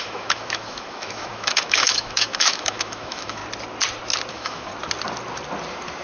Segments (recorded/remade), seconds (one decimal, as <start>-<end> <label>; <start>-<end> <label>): 0.0-3.4 remade; 3.4-4.3 recorded; 4.3-4.7 remade; 4.7-6.0 recorded